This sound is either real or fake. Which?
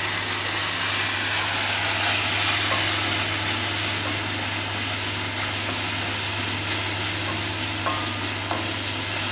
real